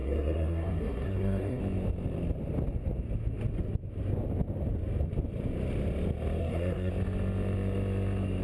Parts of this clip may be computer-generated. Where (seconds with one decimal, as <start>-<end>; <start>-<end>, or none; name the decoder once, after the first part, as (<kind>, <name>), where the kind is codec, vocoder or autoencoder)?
0.0-1.6 (codec, SNAC); 6.4-6.9

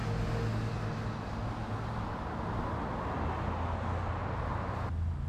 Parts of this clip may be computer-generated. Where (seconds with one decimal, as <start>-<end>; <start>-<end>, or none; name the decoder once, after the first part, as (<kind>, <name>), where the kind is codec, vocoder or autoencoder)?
none

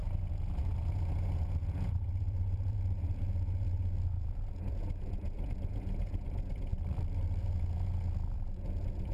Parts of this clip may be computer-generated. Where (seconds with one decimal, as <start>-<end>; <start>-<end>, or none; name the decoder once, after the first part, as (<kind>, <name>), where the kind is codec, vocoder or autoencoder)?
0.0-6.7 (vocoder, Vocos); 7.4-9.1

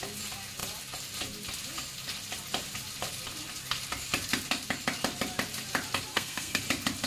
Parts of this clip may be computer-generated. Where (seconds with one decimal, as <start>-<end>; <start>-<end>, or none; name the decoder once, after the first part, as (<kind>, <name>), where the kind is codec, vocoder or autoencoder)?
6.1-6.6 (codec, SNAC)

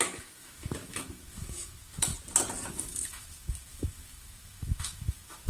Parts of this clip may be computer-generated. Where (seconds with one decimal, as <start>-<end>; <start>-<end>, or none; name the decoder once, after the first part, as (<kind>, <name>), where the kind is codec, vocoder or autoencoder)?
0.0-2.1 (autoencoder, DAC-VAE); 2.7-5.5

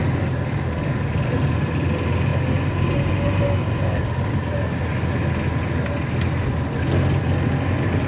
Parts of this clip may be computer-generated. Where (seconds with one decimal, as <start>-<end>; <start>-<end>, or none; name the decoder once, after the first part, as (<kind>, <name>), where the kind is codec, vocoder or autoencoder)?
none

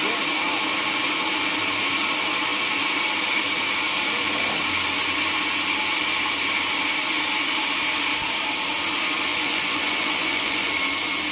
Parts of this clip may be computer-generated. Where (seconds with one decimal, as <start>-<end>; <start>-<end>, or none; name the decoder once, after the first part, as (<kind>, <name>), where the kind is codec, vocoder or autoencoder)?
9.3-10.7 (vocoder, Vocos)

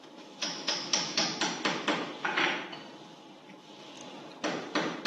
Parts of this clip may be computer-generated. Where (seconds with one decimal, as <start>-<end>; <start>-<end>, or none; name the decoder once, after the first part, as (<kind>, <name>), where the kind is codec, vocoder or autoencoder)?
0.0-1.2 (autoencoder, DAC-VAE); 3.5-4.0